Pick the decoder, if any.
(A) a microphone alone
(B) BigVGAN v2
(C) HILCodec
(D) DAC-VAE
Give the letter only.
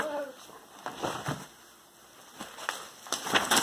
A